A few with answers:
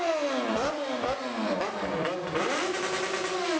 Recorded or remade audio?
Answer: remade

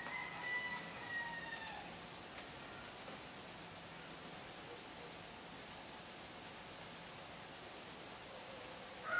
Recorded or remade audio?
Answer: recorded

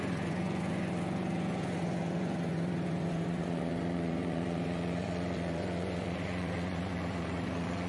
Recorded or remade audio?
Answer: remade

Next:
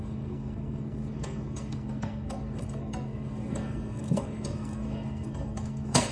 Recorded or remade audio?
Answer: remade